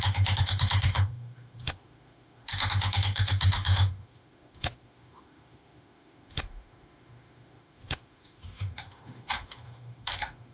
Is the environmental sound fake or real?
fake